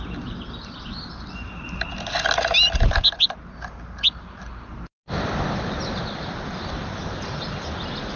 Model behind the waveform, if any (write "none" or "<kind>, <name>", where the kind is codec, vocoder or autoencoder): none